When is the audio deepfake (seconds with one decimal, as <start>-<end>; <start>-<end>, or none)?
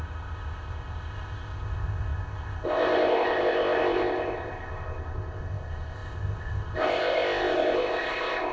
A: 0.0-8.5